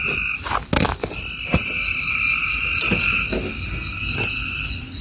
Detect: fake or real real